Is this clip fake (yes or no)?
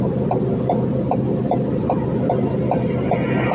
no